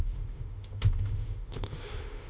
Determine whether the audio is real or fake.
fake